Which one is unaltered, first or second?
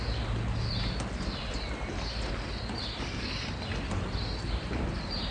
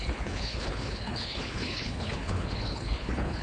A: first